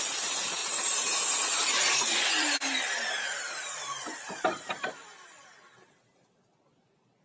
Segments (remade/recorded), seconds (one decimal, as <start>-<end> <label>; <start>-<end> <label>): 0.0-0.6 recorded; 0.6-4.9 remade; 4.9-7.2 recorded